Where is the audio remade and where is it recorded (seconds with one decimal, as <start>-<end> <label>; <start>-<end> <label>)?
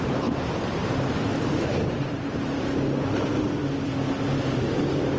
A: 0.0-5.2 remade